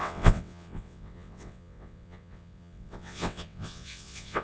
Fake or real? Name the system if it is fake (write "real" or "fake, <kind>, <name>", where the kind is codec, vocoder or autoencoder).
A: fake, vocoder, WaveNeXt